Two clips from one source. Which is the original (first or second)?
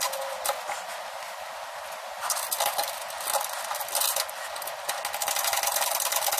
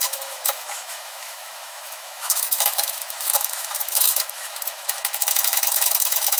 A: first